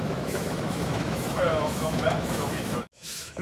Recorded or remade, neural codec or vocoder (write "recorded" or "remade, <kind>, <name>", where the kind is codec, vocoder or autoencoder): remade, autoencoder, DAC-VAE